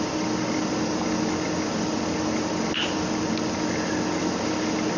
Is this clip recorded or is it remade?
recorded